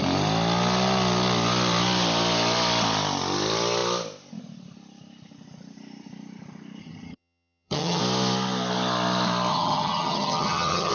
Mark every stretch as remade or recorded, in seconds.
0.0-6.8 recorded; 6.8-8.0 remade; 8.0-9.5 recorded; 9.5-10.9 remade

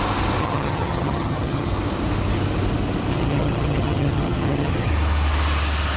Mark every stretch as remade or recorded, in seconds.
0.0-0.4 recorded; 0.4-1.7 remade; 1.7-3.1 recorded; 3.1-4.9 remade; 4.9-6.0 recorded